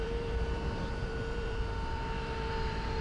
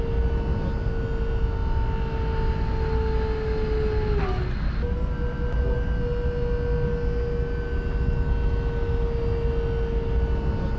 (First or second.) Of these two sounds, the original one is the second